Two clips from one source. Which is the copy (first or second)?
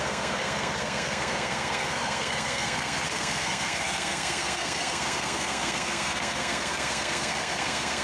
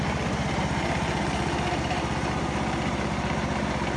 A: first